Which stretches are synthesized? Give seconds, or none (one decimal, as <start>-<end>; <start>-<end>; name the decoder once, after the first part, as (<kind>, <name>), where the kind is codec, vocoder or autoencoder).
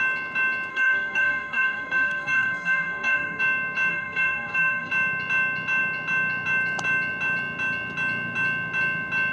0.7-3.4 (codec, SNAC); 3.9-4.9